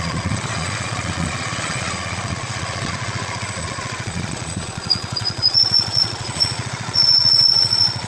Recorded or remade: remade